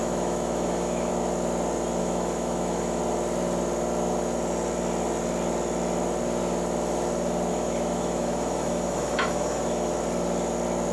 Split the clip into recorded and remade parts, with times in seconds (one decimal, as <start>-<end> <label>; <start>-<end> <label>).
0.0-1.1 remade; 1.1-2.0 recorded; 2.0-3.0 remade; 3.0-7.5 recorded; 7.5-9.9 remade; 9.9-10.9 recorded